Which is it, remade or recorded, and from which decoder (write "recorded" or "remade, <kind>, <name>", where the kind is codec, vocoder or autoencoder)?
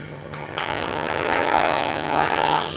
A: remade, vocoder, HiFi-GAN